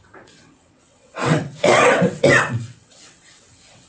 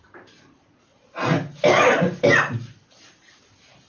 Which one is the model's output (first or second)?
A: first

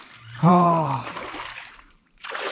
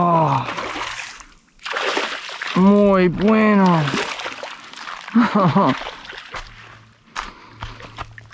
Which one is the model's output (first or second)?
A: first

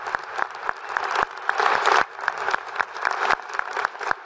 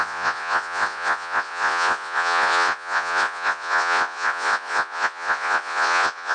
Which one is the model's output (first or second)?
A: second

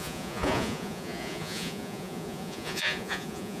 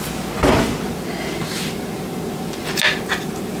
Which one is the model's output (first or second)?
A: first